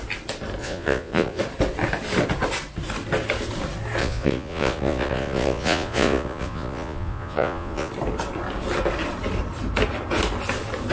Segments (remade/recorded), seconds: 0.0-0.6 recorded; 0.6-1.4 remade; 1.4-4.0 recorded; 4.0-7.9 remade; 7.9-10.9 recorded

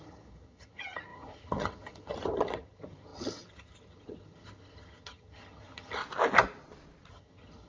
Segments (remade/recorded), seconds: 0.0-6.0 remade; 6.0-7.1 recorded; 7.1-7.7 remade

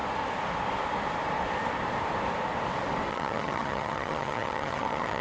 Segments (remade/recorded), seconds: 0.0-3.1 recorded; 3.1-5.2 remade

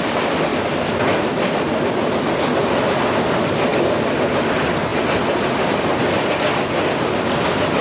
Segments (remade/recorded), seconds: 0.0-7.8 recorded